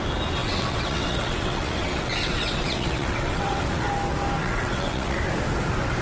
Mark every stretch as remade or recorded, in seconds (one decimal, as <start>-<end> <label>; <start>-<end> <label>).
0.0-0.4 recorded; 0.4-3.9 remade; 3.9-4.4 recorded; 4.4-5.2 remade; 5.2-6.0 recorded